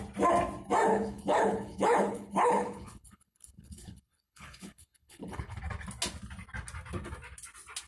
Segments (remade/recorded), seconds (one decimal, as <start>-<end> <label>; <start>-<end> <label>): 0.0-0.9 recorded; 0.9-5.6 remade; 5.6-7.9 recorded